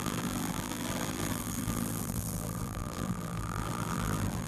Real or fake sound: fake